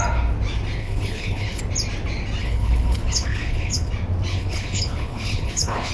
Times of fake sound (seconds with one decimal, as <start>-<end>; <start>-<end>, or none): 0.8-1.6; 2.4-3.9; 4.3-5.9